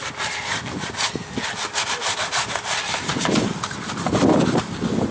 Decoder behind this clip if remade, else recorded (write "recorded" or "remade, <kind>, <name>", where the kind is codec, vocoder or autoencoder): recorded